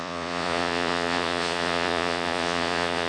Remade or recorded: remade